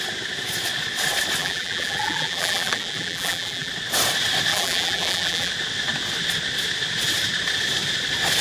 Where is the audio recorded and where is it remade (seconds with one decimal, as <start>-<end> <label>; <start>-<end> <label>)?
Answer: 0.0-1.4 recorded; 1.4-3.7 remade; 3.7-4.5 recorded; 4.5-5.5 remade; 5.5-8.4 recorded